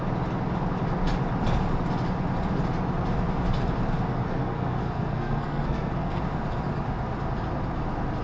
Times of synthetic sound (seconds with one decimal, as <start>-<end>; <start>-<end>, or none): 4.1-6.2